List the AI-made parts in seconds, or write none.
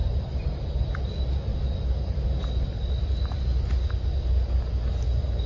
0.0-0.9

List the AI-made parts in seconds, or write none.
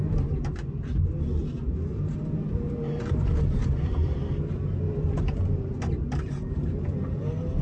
1.6-7.6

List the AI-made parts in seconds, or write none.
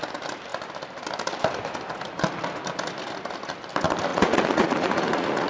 4.1-5.5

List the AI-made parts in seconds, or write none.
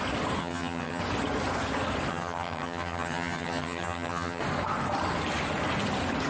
0.4-1.0; 2.1-4.4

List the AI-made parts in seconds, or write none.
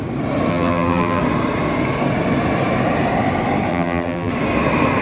0.5-1.2; 3.7-4.3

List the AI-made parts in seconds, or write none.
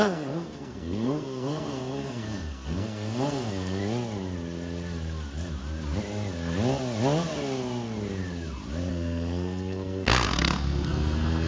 0.0-3.8; 8.9-11.5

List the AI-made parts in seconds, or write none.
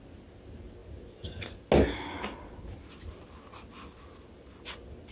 none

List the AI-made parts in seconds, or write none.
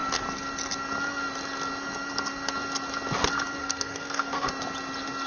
3.6-4.5